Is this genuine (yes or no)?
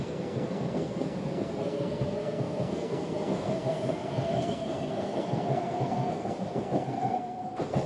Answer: no